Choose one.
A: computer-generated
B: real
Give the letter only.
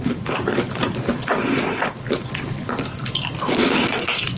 B